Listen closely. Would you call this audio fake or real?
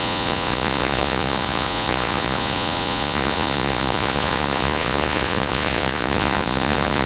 fake